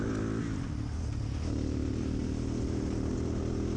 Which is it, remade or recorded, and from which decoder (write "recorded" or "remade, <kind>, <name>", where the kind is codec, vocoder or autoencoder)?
recorded